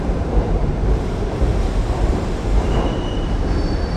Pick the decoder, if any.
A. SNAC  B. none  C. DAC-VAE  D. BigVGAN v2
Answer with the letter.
D